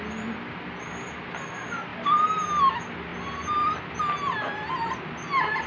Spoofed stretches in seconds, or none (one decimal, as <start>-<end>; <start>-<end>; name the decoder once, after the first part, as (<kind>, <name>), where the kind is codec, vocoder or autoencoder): none